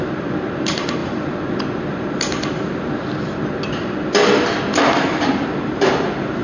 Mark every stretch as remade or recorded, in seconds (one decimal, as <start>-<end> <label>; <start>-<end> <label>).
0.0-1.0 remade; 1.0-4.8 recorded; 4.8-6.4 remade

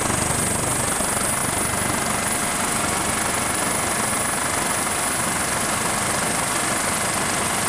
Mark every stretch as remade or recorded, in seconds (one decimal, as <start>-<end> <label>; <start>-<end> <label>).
0.0-7.7 recorded

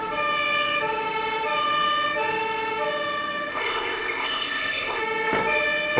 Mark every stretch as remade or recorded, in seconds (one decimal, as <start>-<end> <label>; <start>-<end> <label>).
0.0-3.5 recorded; 3.5-5.0 remade; 5.0-6.0 recorded

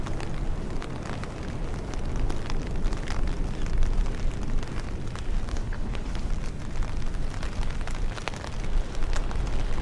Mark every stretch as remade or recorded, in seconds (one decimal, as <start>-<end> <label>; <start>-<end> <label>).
0.0-5.5 recorded; 5.5-6.3 remade; 6.3-9.8 recorded